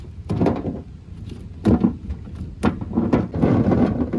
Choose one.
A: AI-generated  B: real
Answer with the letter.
B